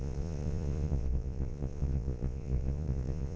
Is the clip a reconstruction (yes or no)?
yes